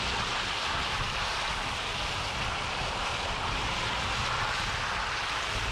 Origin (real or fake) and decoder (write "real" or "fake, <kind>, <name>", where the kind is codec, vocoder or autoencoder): real